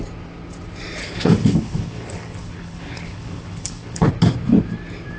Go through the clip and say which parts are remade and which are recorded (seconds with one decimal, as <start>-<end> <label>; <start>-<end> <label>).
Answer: 0.0-1.0 recorded; 1.0-4.1 remade; 4.1-5.2 recorded